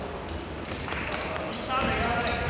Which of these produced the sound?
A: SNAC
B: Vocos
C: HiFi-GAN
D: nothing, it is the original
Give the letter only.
D